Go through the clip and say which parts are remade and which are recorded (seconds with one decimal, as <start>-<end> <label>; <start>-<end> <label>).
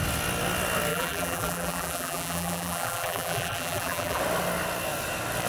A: 0.0-0.9 recorded; 0.9-4.2 remade; 4.2-5.5 recorded